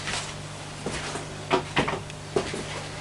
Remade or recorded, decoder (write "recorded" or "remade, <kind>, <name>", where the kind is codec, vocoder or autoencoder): recorded